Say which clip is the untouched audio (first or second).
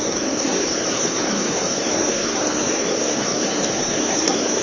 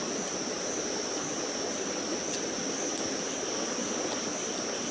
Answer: second